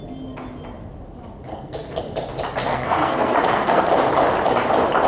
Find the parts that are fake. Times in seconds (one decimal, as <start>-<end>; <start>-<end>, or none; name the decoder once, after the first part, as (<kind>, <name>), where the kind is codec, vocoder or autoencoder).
1.5-2.0 (codec, SNAC); 2.7-3.8